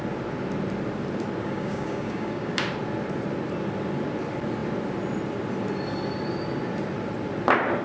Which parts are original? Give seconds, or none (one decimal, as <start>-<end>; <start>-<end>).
0.0-1.4; 2.5-7.8